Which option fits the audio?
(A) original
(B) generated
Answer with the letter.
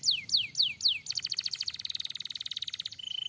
A